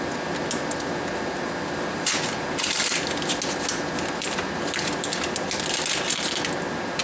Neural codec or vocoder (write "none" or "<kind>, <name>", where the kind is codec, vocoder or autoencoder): none